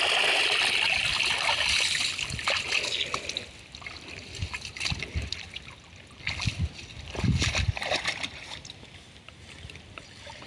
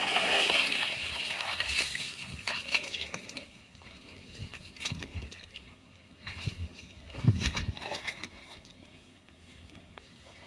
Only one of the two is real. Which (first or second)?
first